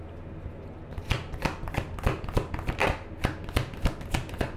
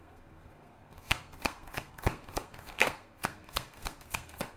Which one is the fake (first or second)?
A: second